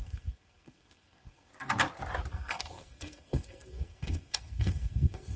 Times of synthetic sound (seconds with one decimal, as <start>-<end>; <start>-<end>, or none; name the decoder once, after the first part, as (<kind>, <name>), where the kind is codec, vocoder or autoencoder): 0.0-1.5 (codec, SNAC); 2.3-5.4